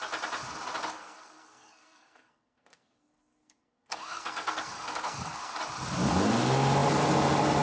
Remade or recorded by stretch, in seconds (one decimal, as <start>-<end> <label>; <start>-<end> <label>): 0.0-1.0 recorded; 1.0-5.6 remade; 5.6-7.6 recorded